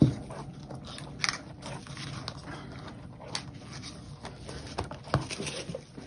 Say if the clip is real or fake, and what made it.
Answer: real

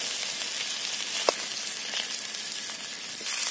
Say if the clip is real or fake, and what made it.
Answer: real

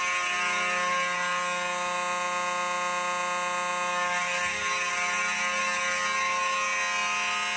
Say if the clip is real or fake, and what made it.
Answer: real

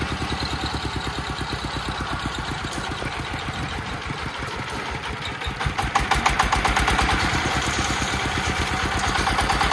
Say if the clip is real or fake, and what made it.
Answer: real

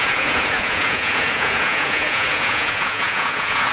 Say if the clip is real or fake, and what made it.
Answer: fake, vocoder, Vocos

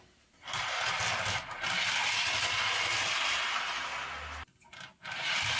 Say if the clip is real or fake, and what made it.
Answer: real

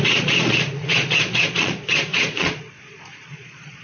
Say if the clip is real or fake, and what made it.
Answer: fake, vocoder, Vocos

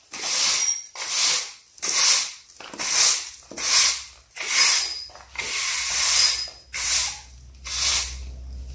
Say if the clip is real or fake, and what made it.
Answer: real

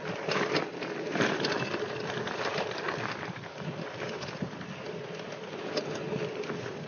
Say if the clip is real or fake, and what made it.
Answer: real